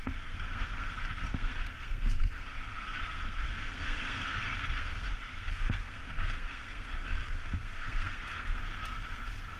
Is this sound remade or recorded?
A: remade